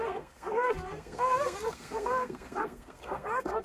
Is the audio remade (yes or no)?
yes